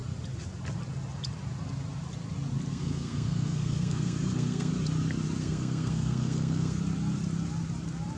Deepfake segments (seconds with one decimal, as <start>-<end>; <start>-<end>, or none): 2.7-4.7; 5.4-6.8